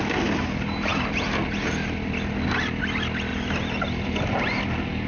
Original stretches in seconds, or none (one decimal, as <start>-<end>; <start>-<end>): 0.0-5.1